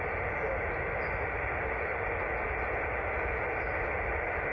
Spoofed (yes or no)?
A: no